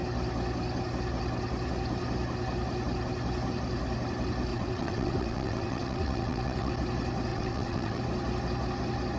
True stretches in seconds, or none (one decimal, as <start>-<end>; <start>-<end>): 0.0-4.5; 6.7-7.3; 8.0-9.2